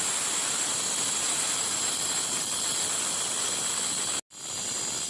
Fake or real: real